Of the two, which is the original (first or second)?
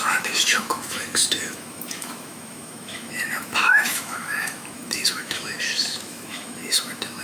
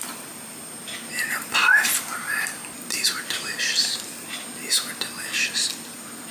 second